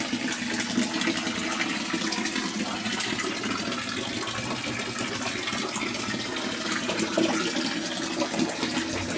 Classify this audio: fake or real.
real